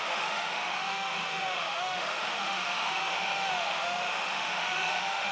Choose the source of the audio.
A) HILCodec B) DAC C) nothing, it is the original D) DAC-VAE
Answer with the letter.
D